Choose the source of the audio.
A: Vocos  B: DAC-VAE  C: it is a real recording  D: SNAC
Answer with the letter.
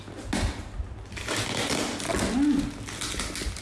C